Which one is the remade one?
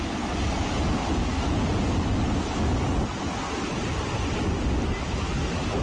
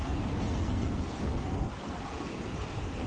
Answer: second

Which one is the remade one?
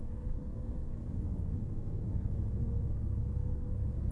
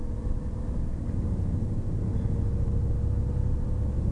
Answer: first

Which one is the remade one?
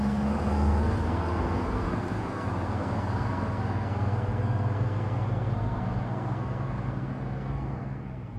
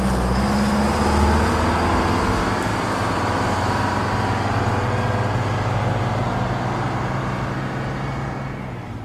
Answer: first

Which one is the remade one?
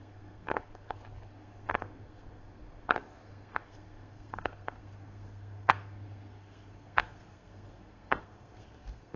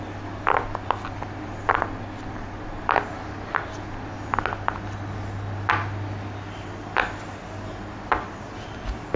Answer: first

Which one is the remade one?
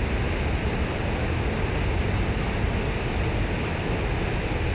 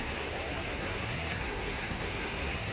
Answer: second